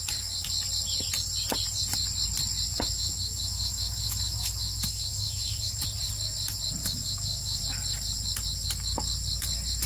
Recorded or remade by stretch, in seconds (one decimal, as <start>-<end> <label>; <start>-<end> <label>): 0.0-2.7 recorded; 2.7-5.8 remade; 5.8-6.8 recorded; 6.8-7.6 remade; 7.6-9.9 recorded